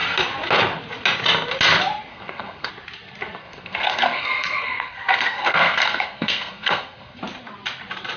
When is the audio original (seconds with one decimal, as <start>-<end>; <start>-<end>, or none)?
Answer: 0.0-2.1; 2.7-3.4; 7.2-8.2

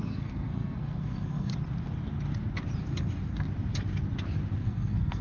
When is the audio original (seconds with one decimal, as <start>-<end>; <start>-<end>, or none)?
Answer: 1.5-4.6

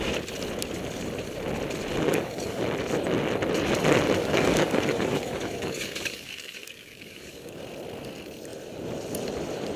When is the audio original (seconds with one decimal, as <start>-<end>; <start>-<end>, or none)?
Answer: 0.0-2.1; 2.6-4.2; 7.6-9.8

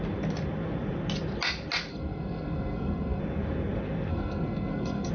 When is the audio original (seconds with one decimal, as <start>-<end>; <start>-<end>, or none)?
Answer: 0.0-1.9; 3.2-4.1

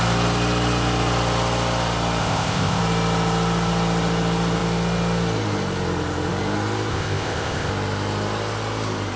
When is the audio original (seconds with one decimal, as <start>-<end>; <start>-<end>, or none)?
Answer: 0.0-2.2; 2.8-6.9; 7.7-9.2

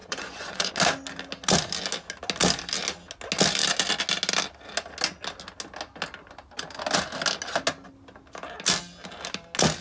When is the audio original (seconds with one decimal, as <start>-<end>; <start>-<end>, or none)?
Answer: 0.7-9.8

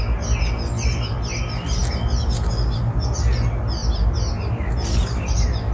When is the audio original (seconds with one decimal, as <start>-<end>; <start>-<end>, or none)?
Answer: 0.0-5.7

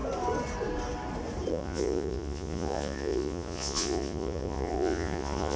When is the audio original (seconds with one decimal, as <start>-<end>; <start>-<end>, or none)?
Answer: 0.0-1.5